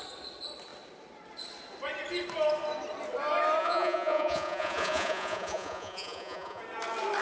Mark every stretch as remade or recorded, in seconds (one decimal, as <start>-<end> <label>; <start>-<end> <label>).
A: 0.0-3.6 recorded; 3.6-6.6 remade; 6.6-7.2 recorded

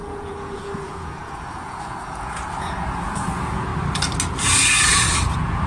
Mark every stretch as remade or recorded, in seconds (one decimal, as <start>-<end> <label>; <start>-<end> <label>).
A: 0.0-3.7 remade; 3.7-4.4 recorded; 4.4-5.7 remade

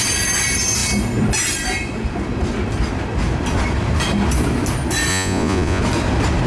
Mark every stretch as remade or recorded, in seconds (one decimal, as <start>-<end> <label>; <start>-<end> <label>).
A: 0.0-5.1 recorded; 5.1-5.8 remade; 5.8-6.5 recorded

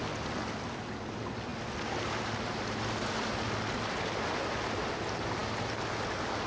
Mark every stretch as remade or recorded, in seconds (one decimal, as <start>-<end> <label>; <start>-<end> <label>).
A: 0.0-6.5 recorded

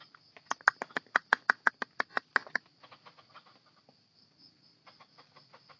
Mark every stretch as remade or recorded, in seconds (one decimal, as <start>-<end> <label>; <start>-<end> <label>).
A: 0.0-1.1 recorded; 1.1-1.7 remade; 1.7-5.8 recorded

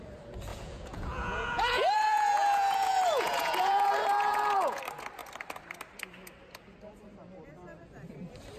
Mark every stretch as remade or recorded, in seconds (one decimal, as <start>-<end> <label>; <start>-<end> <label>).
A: 0.0-0.5 recorded; 0.5-4.8 remade; 4.8-8.6 recorded

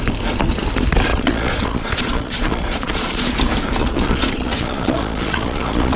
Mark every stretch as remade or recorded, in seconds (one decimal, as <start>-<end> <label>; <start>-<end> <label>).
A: 0.0-1.1 recorded; 1.1-3.2 remade; 3.2-3.8 recorded; 3.8-6.0 remade

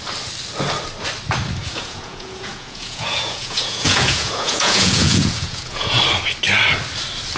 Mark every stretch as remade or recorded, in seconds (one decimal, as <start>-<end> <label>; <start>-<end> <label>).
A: 0.0-1.6 recorded; 1.6-6.0 remade; 6.0-7.4 recorded